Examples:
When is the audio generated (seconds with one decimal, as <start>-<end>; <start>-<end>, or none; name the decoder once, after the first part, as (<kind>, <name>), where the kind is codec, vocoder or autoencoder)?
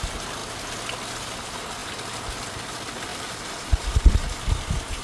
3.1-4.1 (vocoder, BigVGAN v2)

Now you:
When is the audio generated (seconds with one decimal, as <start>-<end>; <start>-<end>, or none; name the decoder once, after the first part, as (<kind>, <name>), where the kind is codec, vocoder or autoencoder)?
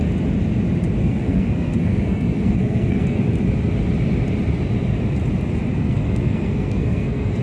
1.0-3.2 (codec, SNAC); 5.7-7.4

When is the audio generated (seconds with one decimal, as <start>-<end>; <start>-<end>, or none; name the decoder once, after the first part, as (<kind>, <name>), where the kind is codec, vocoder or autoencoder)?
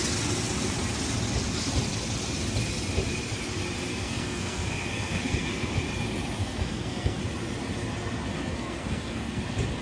3.9-5.7 (codec, SNAC); 6.4-7.2; 8.3-9.4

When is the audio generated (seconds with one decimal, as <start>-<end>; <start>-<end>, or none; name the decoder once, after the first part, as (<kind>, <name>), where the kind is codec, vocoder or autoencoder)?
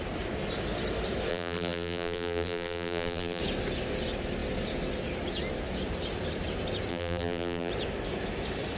1.3-3.4 (vocoder, BigVGAN v2); 6.9-7.7